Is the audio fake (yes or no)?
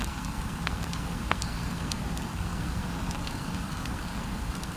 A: yes